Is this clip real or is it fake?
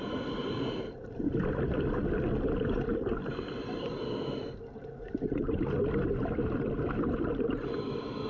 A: real